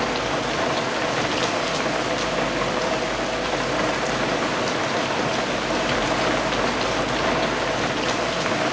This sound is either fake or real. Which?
real